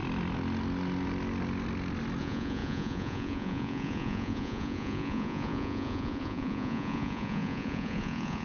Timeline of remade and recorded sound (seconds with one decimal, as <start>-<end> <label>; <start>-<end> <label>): 0.0-2.2 recorded; 2.2-8.4 remade